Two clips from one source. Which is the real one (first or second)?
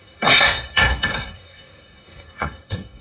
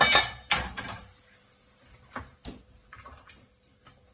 second